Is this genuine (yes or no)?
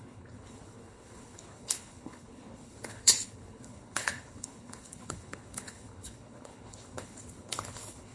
no